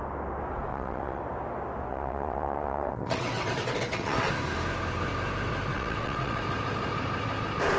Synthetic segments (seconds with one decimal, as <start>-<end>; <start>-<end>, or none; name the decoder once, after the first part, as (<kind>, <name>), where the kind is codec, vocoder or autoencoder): 0.7-1.2 (vocoder, WaveNeXt); 1.9-4.3; 5.7-6.4